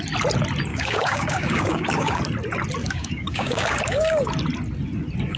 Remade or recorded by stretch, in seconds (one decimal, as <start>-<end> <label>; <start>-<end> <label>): 0.0-0.7 recorded; 0.7-2.2 remade; 2.2-2.8 recorded; 2.8-4.3 remade; 4.3-5.4 recorded